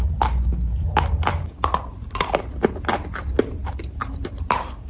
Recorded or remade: recorded